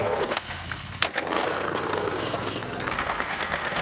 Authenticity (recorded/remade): remade